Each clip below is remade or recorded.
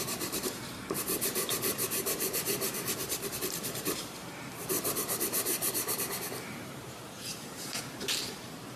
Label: remade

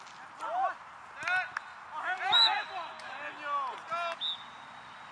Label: recorded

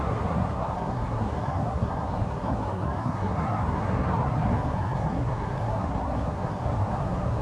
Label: remade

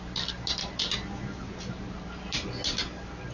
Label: recorded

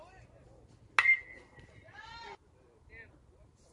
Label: recorded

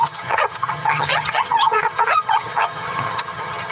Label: remade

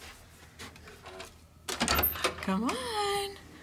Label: recorded